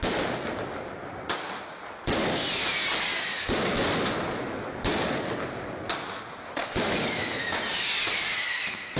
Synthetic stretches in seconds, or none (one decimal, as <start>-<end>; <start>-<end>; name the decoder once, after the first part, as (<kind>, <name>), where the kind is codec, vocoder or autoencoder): none